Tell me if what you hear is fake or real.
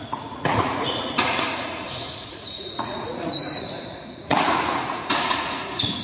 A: fake